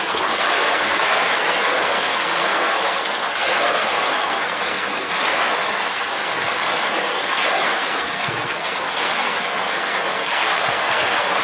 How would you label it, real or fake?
fake